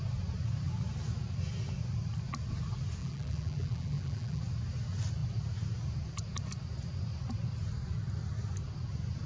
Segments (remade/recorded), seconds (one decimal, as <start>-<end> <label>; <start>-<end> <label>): 0.0-3.0 recorded; 3.0-4.4 remade; 4.4-9.3 recorded